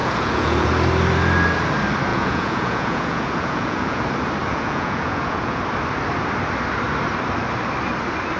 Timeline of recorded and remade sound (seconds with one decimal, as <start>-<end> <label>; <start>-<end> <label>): 0.0-0.7 remade; 0.7-2.1 recorded; 2.1-4.0 remade; 4.0-4.5 recorded; 4.5-5.6 remade; 5.6-8.4 recorded